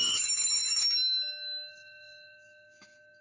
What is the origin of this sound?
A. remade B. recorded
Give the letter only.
A